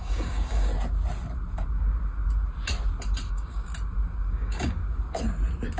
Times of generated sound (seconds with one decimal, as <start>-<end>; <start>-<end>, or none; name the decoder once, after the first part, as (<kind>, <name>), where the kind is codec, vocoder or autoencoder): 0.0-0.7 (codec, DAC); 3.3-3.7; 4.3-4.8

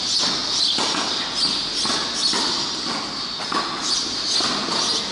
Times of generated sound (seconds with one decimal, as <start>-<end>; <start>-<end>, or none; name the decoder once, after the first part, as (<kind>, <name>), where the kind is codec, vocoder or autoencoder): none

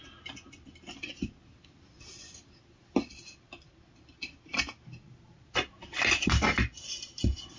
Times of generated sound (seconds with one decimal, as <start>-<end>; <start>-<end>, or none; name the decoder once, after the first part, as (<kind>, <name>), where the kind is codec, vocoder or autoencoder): none